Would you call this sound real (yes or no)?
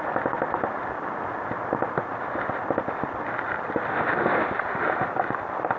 yes